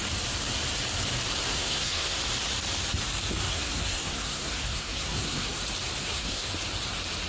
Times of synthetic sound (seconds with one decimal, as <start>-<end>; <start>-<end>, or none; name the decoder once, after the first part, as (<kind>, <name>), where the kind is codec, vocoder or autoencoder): 1.5-2.2 (codec, SNAC); 3.4-5.6; 6.0-6.5